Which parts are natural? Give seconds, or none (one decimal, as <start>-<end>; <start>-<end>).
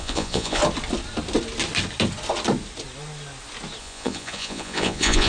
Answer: 0.6-3.8